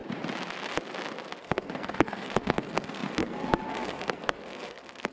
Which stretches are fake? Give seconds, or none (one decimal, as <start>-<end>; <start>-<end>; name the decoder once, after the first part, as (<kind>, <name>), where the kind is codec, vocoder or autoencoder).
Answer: 1.4-5.1 (codec, SNAC)

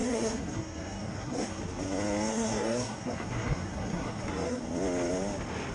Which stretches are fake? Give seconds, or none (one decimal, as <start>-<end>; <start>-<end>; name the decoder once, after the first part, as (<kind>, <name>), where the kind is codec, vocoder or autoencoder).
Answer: 0.0-1.6 (codec, SNAC); 2.3-4.6

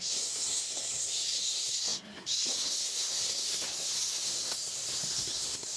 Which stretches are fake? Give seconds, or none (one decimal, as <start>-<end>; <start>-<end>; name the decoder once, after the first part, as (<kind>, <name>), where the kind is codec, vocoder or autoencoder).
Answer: 0.0-5.8 (codec, SNAC)

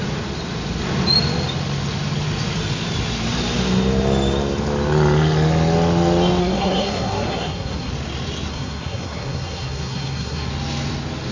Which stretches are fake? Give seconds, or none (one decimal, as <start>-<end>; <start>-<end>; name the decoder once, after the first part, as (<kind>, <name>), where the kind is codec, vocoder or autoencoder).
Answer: 6.4-7.9 (codec, SNAC); 8.5-10.5